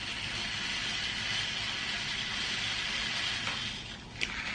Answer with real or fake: real